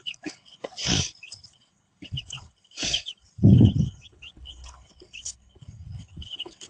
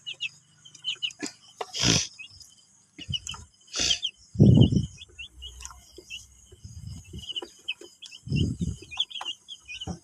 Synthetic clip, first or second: first